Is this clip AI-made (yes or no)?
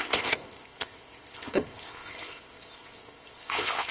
yes